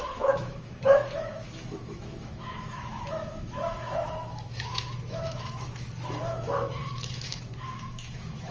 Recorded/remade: remade